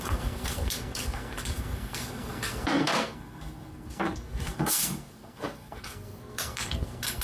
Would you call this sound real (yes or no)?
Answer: no